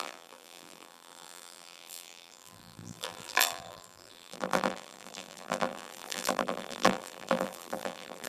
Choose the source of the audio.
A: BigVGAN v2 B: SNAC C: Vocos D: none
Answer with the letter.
A